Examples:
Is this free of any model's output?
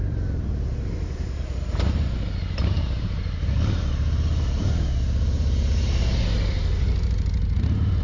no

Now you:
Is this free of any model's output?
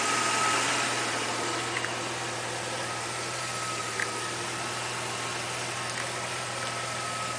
yes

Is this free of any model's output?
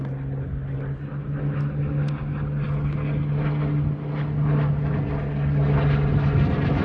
yes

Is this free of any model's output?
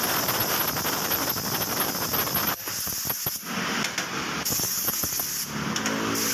yes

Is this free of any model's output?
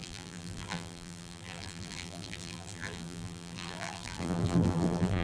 no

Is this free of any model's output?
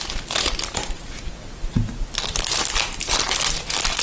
yes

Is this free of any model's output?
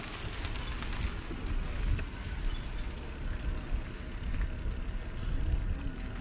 yes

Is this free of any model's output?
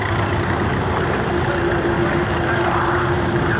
yes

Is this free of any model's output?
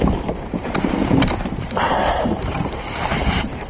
no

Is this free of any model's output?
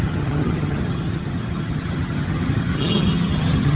no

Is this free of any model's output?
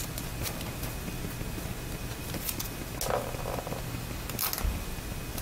yes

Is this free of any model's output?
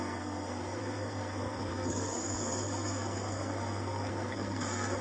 no